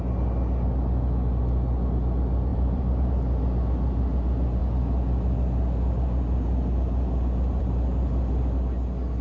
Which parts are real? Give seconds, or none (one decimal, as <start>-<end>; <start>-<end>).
0.0-2.5; 3.1-9.2